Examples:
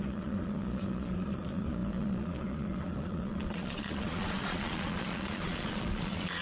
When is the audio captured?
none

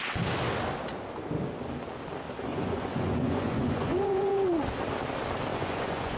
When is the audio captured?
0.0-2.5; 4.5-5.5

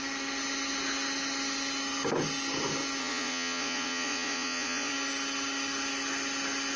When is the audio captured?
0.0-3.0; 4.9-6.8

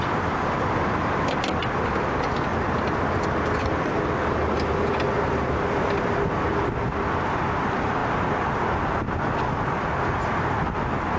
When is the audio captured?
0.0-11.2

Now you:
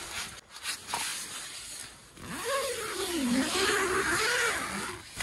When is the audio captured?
0.0-5.2

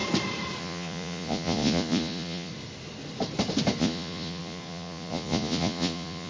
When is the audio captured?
0.0-0.6; 2.5-3.8

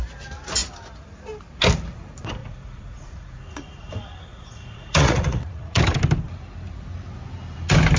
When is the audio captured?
0.0-2.4; 3.9-4.3; 5.8-8.0